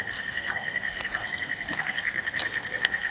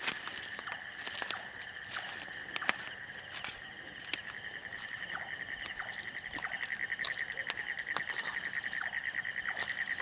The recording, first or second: second